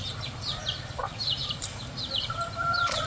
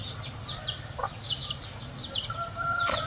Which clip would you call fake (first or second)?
first